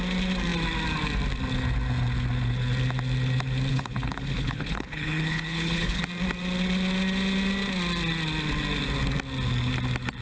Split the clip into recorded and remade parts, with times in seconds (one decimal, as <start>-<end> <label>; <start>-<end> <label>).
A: 0.0-3.7 recorded; 3.7-6.0 remade; 6.0-10.2 recorded